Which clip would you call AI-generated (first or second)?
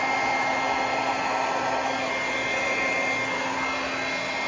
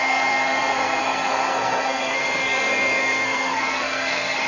second